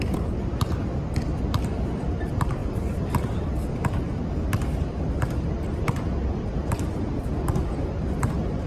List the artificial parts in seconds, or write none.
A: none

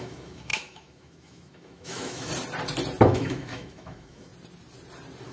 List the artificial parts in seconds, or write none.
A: 0.0-2.3 (autoencoder, DAC-VAE); 3.0-4.3

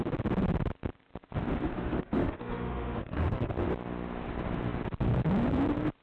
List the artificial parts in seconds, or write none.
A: 1.7-3.5 (autoencoder, DAC-VAE)

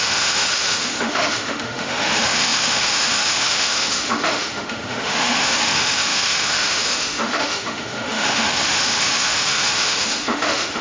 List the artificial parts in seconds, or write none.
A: 0.0-10.8 (autoencoder, DAC-VAE)